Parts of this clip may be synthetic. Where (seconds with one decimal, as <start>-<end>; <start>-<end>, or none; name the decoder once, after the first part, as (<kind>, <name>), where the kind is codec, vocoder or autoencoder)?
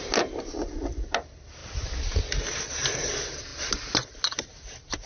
none